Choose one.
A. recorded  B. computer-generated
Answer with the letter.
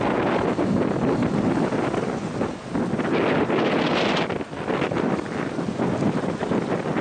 A